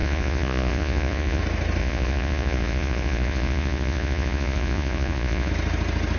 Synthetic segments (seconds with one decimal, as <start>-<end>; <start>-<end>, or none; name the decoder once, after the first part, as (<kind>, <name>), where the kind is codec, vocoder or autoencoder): 0.0-1.4 (vocoder, Vocos); 1.8-5.5